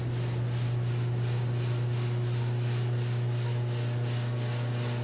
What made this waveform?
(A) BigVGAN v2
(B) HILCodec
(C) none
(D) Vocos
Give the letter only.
C